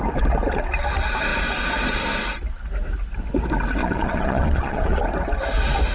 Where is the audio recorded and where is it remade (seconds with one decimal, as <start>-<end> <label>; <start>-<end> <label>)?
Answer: 0.0-3.8 recorded; 3.8-5.0 remade; 5.0-5.9 recorded